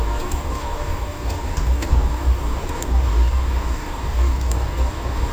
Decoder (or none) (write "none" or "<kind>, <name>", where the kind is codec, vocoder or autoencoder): codec, DAC